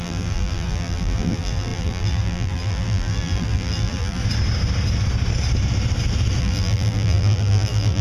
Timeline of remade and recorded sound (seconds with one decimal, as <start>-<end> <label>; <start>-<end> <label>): 0.0-4.2 remade; 4.2-6.4 recorded; 6.4-8.0 remade